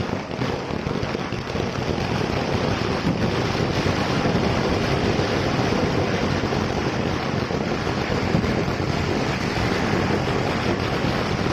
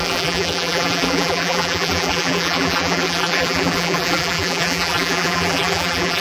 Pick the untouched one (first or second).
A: first